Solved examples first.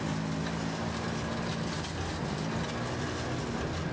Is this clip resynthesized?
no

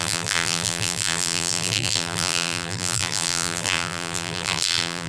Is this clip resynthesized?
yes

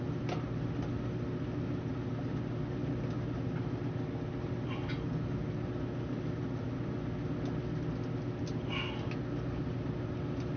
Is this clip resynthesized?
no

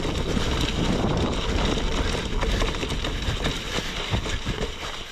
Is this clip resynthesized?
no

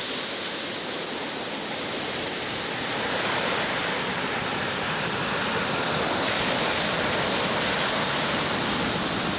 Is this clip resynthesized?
no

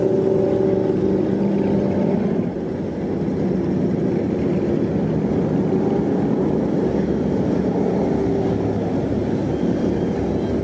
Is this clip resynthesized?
no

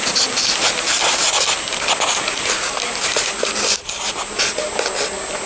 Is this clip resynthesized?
no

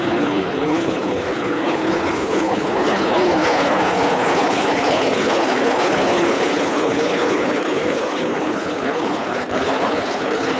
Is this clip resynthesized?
yes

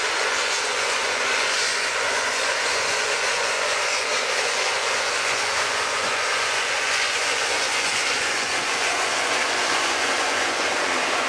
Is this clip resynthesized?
yes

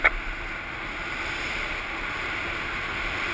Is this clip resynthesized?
no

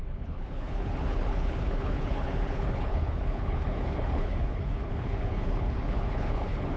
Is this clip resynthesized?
yes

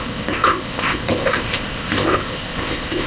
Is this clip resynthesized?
yes